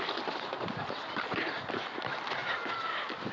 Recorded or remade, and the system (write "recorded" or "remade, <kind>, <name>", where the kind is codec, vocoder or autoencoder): recorded